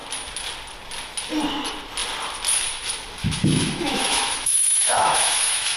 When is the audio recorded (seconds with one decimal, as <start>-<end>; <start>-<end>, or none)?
0.0-3.2